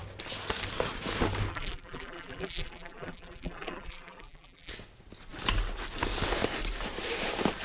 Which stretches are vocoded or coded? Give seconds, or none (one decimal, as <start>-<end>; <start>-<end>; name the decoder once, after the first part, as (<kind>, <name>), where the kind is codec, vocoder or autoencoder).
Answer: 1.5-4.7 (vocoder, BigVGAN v2)